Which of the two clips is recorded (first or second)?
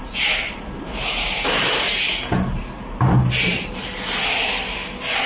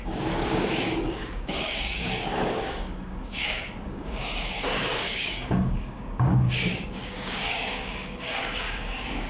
first